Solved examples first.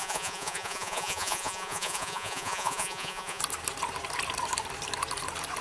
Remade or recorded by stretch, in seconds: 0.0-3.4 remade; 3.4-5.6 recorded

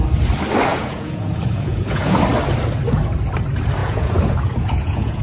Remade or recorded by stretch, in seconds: 0.0-0.7 recorded; 0.7-2.2 remade; 2.2-3.8 recorded; 3.8-5.2 remade